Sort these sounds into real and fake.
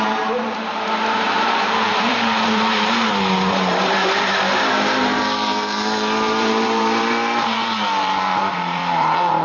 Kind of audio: fake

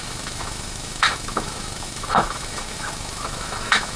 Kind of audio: fake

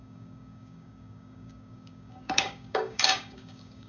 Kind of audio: fake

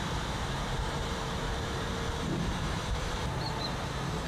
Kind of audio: fake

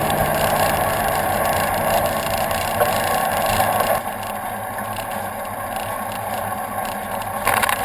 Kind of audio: real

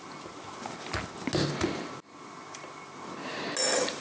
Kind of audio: real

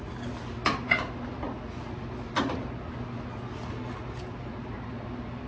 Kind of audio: real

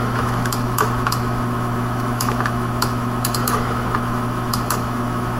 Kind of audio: fake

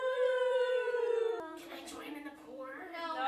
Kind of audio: fake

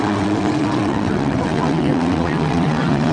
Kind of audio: fake